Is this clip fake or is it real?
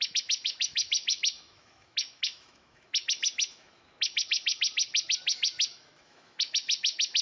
fake